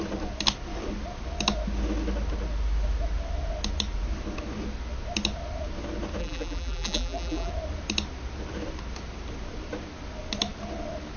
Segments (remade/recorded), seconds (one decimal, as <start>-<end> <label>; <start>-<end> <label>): 0.0-6.2 recorded; 6.2-7.5 remade; 7.5-11.2 recorded